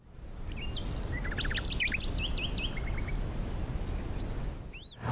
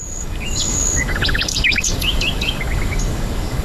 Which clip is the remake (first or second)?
second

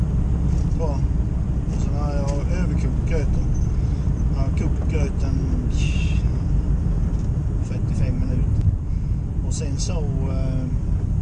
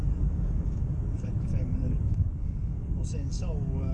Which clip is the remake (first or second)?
second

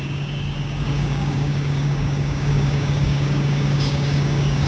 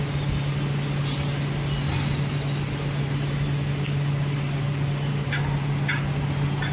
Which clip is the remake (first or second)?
first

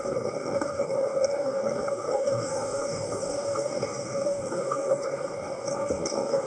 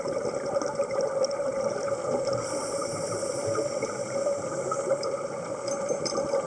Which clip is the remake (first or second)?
first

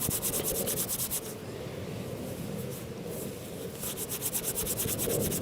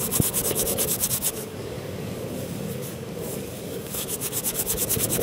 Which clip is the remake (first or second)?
second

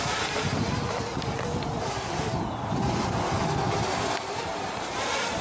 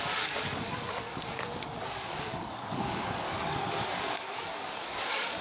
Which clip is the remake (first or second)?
second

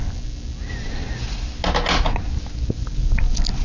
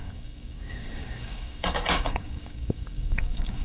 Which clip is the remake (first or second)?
second